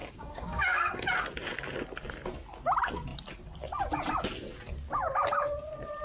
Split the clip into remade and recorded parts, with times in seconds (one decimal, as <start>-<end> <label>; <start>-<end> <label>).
0.0-1.1 remade; 1.1-6.0 recorded